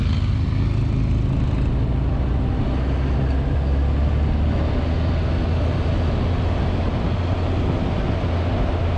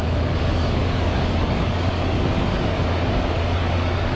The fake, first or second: second